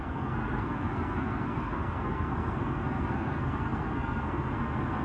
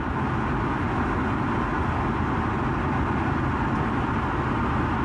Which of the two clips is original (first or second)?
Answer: second